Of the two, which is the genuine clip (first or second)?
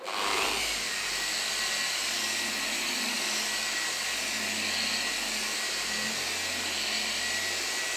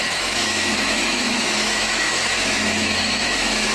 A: first